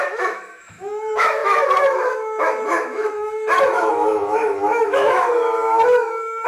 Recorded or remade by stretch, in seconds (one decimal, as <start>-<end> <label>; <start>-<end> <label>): 0.0-6.5 remade

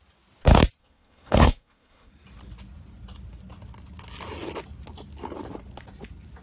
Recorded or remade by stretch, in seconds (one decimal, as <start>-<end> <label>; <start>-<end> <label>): 0.0-0.8 recorded; 0.8-2.1 remade; 2.1-6.4 recorded